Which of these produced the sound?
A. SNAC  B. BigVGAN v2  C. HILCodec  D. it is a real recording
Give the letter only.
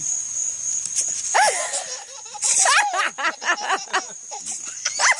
D